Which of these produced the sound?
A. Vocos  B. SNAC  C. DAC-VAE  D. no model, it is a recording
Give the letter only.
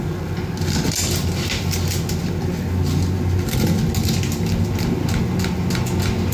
D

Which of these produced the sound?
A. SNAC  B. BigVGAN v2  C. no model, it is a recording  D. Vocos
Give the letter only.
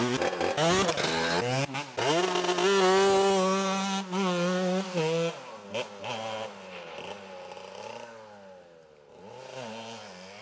C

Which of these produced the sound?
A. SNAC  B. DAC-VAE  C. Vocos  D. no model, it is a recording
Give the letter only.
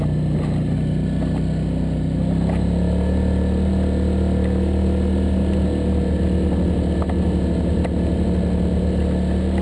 D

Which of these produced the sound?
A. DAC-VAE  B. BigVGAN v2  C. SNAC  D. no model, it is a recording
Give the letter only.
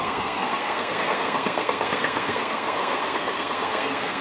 C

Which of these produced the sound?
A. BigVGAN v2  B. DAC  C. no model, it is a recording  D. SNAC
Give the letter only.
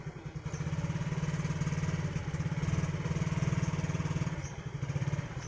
C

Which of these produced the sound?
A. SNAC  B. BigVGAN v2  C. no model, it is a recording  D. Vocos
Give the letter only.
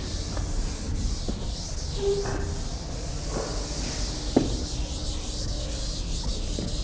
C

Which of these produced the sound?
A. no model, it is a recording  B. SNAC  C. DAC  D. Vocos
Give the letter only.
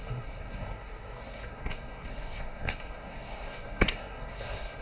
B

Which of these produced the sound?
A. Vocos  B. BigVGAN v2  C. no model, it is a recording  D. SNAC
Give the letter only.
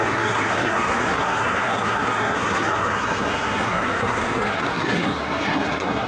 D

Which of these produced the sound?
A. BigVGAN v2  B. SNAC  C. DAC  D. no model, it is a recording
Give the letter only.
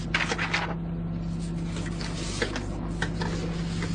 D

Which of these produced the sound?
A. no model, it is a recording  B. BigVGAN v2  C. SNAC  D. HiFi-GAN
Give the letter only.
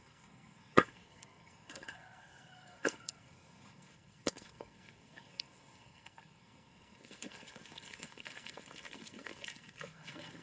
C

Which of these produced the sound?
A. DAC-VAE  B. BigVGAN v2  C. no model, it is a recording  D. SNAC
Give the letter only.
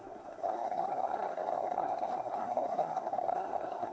D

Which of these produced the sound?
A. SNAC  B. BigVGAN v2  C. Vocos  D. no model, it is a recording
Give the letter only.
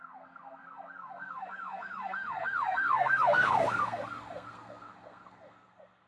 A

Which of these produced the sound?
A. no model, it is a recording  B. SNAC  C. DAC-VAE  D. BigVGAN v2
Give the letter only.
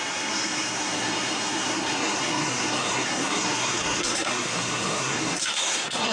B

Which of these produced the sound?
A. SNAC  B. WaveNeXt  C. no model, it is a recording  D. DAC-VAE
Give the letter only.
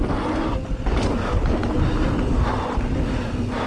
C